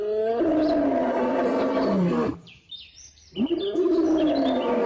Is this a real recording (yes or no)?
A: yes